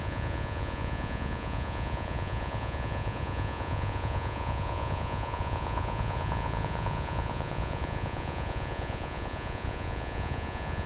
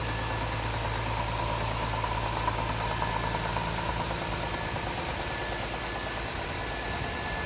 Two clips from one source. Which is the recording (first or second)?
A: second